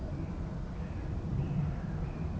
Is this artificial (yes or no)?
no